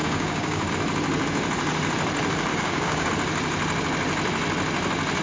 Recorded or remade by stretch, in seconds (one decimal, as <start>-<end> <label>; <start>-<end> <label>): 0.0-0.7 remade; 0.7-2.5 recorded; 2.5-3.1 remade; 3.1-5.2 recorded